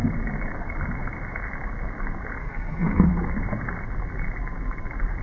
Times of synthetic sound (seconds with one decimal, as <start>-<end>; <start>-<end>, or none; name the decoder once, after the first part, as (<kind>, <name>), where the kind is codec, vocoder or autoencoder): 2.4-3.1 (codec, SNAC)